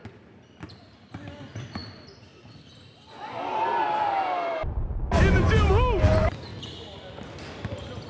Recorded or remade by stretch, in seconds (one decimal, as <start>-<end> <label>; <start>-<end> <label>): 0.0-4.6 recorded; 4.6-5.2 remade; 5.2-8.1 recorded